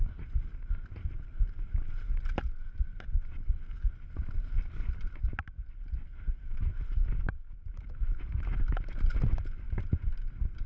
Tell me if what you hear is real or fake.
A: real